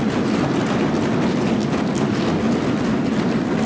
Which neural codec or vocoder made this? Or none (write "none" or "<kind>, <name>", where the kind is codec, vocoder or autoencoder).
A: none